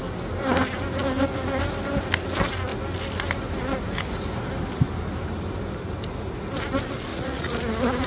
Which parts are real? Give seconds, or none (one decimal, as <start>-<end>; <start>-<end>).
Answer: 0.0-7.1; 7.6-8.1